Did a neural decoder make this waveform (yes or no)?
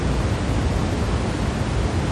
no